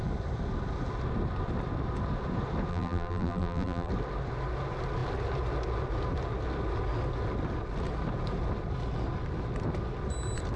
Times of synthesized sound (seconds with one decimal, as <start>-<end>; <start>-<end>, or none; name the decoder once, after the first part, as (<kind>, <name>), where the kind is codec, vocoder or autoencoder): 2.7-3.9 (vocoder, BigVGAN v2)